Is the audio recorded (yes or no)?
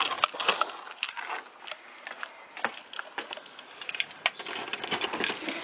yes